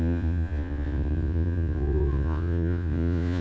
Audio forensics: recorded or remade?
remade